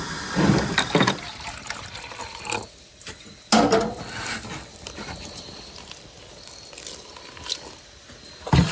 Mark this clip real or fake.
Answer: real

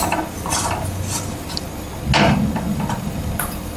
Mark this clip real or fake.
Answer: real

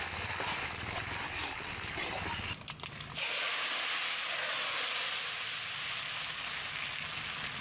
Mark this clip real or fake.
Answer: real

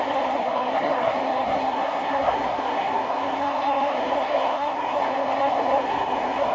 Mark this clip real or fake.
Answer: fake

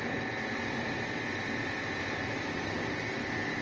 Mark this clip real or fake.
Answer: real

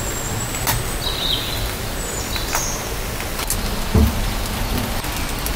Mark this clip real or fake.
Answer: real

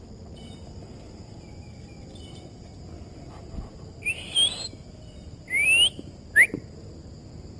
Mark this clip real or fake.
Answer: real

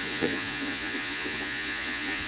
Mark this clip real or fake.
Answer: fake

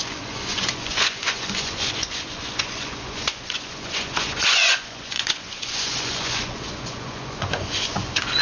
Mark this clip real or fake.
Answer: fake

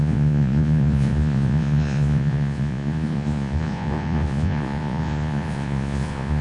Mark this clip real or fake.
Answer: fake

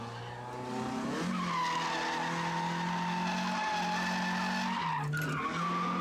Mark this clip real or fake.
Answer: real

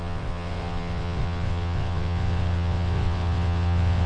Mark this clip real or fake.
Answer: fake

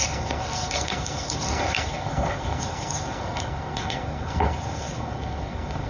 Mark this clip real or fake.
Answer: fake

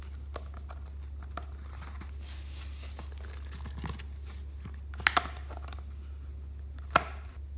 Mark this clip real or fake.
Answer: real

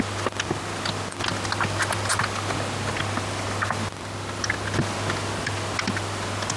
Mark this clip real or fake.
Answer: real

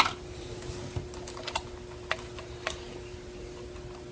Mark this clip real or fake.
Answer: real